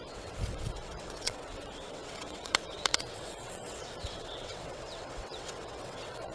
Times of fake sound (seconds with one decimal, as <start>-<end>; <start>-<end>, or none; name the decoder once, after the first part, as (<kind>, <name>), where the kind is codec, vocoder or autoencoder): 0.0-6.3 (vocoder, WaveNeXt)